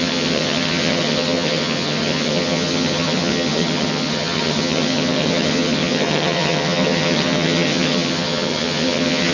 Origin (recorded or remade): remade